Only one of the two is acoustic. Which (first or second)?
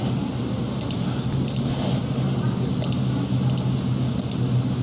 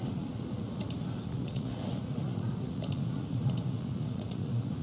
first